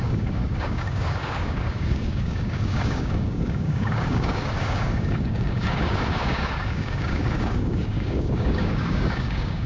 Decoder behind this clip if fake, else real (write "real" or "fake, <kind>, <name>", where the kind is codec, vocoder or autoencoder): fake, codec, DAC